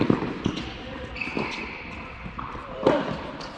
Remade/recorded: recorded